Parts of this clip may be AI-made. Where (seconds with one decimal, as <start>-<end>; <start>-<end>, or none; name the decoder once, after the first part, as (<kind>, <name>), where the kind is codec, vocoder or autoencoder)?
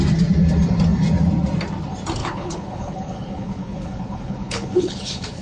2.2-5.4 (codec, HILCodec)